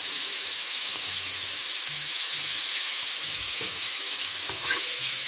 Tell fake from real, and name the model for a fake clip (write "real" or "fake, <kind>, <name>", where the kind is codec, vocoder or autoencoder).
fake, autoencoder, DAC-VAE